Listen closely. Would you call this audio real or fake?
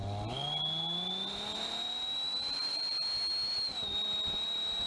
real